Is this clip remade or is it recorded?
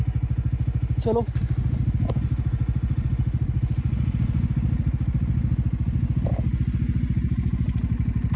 recorded